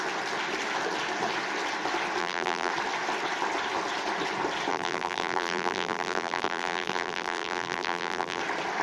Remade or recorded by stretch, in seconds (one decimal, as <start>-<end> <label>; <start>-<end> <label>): 0.0-2.2 recorded; 2.2-2.7 remade; 2.7-4.7 recorded; 4.7-8.4 remade; 8.4-8.8 recorded